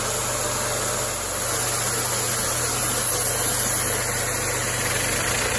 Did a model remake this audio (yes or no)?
no